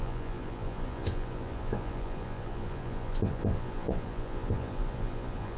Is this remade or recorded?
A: remade